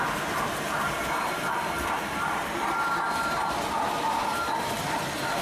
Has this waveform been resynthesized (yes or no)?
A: yes